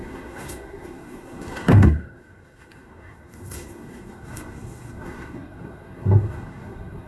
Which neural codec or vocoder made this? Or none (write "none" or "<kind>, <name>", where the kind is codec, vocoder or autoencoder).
codec, SNAC